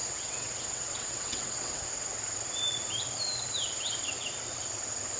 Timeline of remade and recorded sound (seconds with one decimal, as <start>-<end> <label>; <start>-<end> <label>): 0.0-1.9 remade; 1.9-5.2 recorded